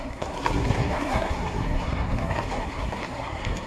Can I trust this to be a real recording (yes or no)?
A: no